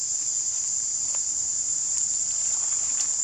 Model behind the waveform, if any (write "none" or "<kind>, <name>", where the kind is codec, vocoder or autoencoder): none